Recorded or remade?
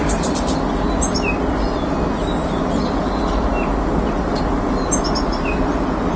recorded